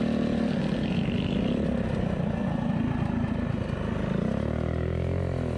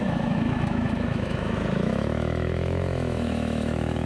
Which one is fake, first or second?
second